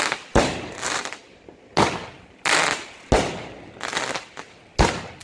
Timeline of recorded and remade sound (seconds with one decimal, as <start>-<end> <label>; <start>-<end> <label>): 0.0-5.2 recorded